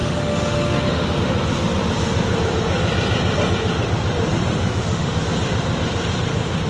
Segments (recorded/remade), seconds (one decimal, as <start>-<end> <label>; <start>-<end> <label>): 0.0-1.2 remade; 1.2-4.5 recorded; 4.5-5.2 remade; 5.2-6.7 recorded